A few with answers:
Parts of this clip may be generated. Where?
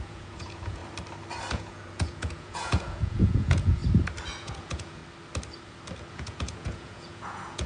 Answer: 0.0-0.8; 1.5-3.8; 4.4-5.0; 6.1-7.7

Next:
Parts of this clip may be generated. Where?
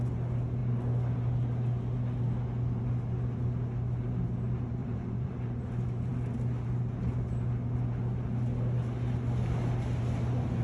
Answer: 4.8-5.6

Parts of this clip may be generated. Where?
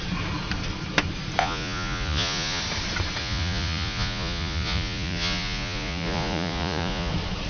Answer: 1.4-2.6; 3.2-7.1